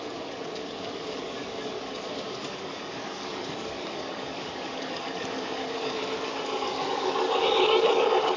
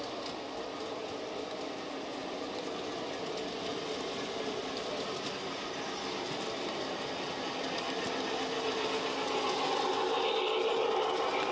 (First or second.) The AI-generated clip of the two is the first